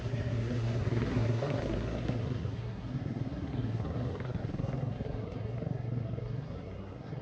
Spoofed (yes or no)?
yes